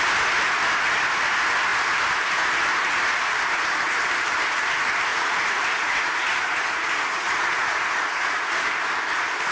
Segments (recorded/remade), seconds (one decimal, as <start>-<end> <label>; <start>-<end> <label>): 0.0-5.1 recorded; 5.1-8.5 remade; 8.5-9.5 recorded